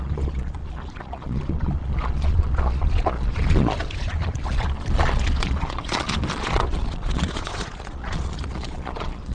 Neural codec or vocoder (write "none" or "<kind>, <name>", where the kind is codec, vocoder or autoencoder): vocoder, Vocos